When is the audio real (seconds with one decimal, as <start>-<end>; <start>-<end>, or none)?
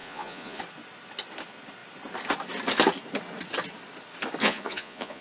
0.6-4.4